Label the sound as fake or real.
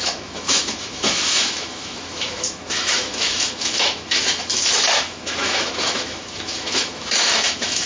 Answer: fake